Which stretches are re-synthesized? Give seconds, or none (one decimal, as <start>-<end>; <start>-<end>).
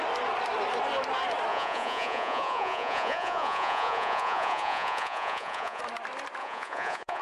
1.5-5.8; 6.4-7.2